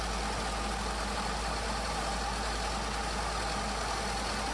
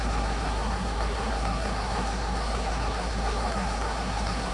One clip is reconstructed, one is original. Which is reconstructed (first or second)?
second